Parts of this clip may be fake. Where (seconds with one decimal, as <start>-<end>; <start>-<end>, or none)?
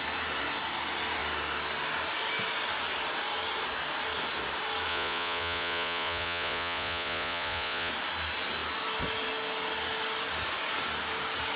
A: 4.9-7.9